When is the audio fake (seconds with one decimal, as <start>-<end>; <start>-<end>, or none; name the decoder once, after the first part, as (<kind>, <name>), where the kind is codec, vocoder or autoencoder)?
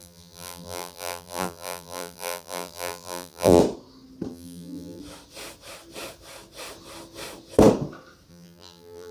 0.0-3.6 (vocoder, BigVGAN v2); 4.3-5.0; 8.3-9.1